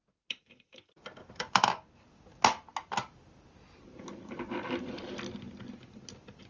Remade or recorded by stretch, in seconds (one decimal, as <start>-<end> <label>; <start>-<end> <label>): 0.0-6.5 recorded